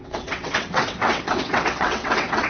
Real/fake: fake